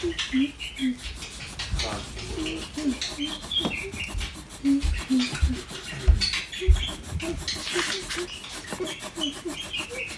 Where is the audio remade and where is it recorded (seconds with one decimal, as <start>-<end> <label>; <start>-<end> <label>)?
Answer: 0.0-10.2 recorded